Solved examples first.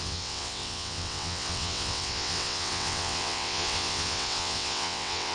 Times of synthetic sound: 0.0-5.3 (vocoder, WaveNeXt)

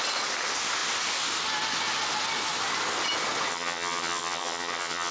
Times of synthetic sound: 3.5-5.1 (vocoder, HiFi-GAN)

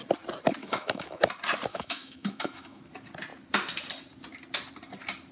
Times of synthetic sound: 0.6-1.2 (autoencoder, DAC-VAE); 1.7-2.8

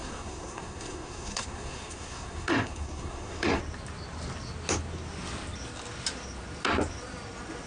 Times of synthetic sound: 0.0-3.6 (codec, SNAC)

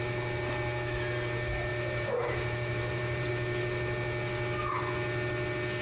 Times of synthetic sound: 1.7-3.3 (vocoder, BigVGAN v2)

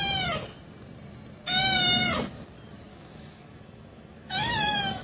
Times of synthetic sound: 2.9-5.0 (autoencoder, DAC-VAE)

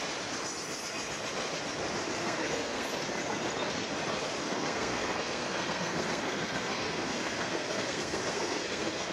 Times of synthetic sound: 2.2-2.9 (codec, SNAC); 4.4-9.1